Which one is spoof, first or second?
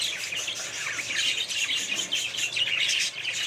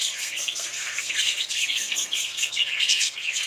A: second